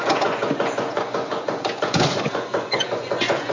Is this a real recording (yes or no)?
no